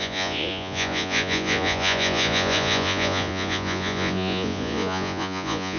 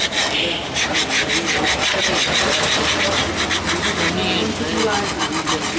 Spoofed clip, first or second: first